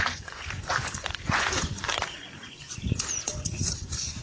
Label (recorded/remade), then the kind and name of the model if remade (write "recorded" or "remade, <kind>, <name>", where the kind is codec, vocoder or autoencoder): remade, vocoder, Vocos